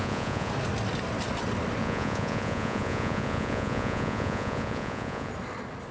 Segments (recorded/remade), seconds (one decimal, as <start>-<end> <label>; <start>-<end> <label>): 0.0-0.5 remade; 0.5-1.8 recorded; 1.8-5.3 remade; 5.3-5.9 recorded